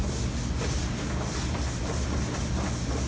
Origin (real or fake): real